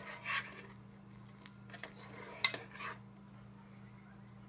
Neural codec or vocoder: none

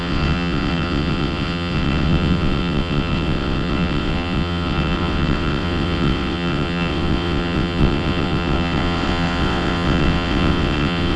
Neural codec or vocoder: vocoder, WaveNeXt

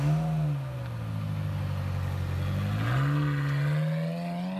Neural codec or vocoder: none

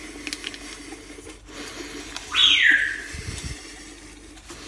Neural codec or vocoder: none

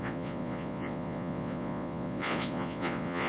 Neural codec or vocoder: vocoder, Vocos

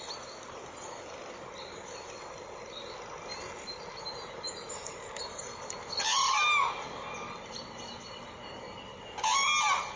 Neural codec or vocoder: none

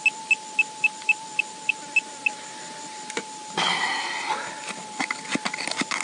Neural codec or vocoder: none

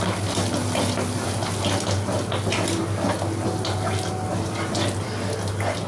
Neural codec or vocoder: none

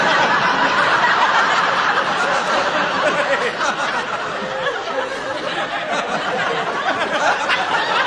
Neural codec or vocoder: none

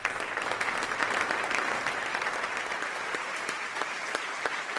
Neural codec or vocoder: vocoder, BigVGAN v2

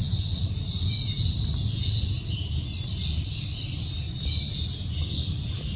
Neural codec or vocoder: none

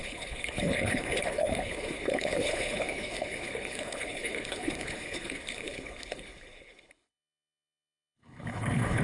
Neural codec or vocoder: codec, HILCodec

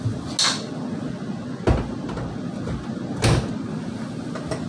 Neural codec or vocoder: none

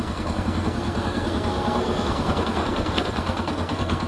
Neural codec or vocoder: codec, SNAC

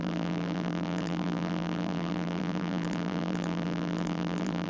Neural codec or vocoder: vocoder, BigVGAN v2